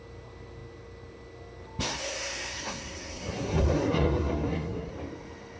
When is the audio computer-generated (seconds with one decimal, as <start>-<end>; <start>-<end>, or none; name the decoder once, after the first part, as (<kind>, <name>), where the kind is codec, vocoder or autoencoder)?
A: 1.9-4.9 (codec, SNAC)